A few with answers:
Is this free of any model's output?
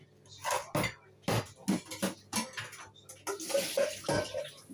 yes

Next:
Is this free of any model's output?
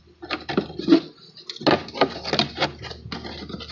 yes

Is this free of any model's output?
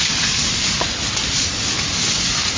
yes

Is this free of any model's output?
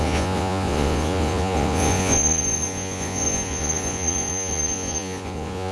no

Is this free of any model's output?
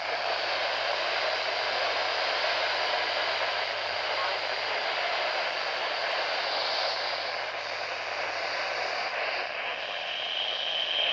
yes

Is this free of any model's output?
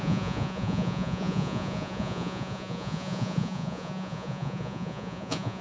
no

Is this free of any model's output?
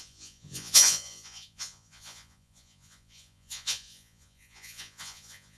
no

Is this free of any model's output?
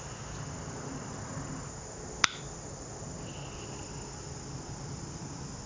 yes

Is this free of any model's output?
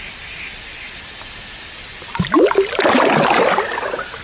yes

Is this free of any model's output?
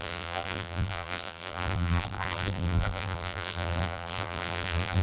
no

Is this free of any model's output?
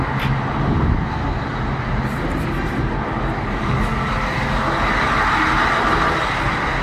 yes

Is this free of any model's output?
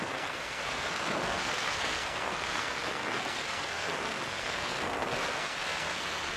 no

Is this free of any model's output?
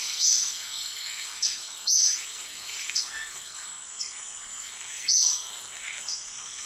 no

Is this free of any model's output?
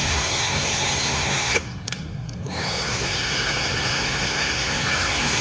no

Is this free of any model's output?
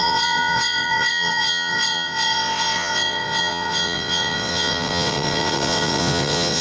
no